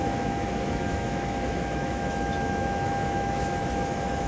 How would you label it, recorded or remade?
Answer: remade